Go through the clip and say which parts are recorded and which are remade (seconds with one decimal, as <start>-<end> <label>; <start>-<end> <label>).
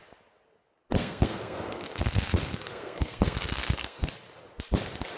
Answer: 0.0-1.0 recorded; 1.0-4.1 remade; 4.1-5.2 recorded